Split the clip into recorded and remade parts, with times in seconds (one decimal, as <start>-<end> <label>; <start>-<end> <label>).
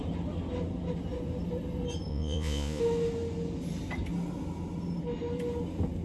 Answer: 0.0-2.1 recorded; 2.1-2.8 remade; 2.8-6.0 recorded